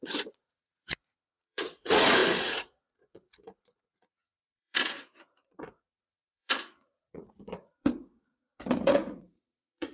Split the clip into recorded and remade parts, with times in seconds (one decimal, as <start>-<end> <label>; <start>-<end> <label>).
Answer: 0.0-9.9 remade